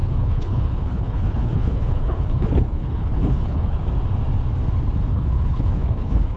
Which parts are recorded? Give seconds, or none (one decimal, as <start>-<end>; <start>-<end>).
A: 3.8-5.1